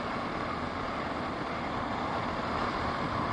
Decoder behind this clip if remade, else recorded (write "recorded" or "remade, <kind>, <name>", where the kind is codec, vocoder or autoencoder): recorded